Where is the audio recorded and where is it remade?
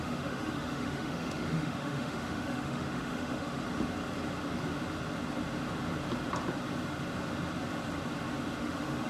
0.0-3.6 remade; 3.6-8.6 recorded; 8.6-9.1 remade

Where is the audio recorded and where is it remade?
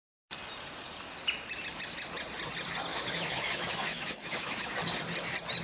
0.0-2.9 recorded; 2.9-4.8 remade; 4.8-5.6 recorded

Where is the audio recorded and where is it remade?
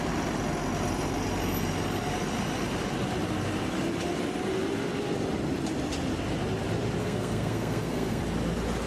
0.0-7.0 recorded; 7.0-8.2 remade; 8.2-8.9 recorded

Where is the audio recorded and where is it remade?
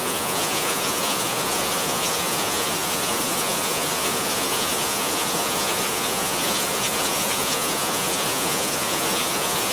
0.0-9.7 remade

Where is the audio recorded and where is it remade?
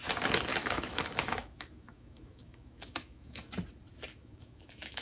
0.0-0.5 recorded; 0.5-3.5 remade; 3.5-4.1 recorded; 4.1-5.0 remade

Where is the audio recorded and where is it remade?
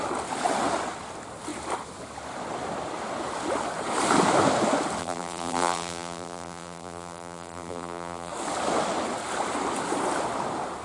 0.0-5.0 recorded; 5.0-8.3 remade; 8.3-10.8 recorded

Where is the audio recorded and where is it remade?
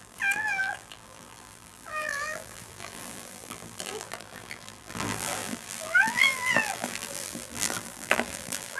0.0-8.8 remade